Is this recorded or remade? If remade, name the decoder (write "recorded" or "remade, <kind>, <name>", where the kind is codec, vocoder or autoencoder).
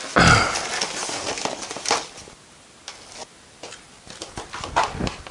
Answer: recorded